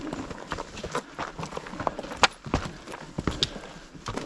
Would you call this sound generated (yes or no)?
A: no